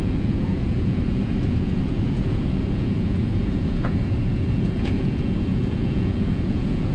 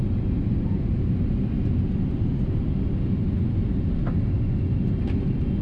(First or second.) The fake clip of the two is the first